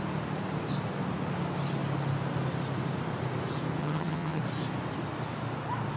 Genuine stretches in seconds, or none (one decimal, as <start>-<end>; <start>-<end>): 0.0-3.8; 4.4-6.0